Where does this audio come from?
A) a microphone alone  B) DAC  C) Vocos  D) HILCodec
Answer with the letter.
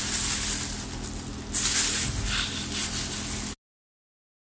A